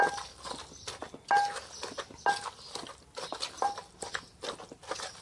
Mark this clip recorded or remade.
recorded